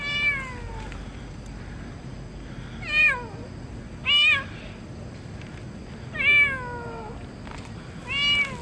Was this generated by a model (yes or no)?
no